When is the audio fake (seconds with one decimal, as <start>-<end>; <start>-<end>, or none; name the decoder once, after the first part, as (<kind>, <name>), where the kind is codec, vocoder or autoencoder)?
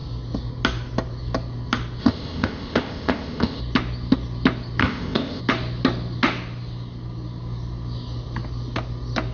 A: 2.0-3.6 (codec, ZipCodec); 4.8-5.4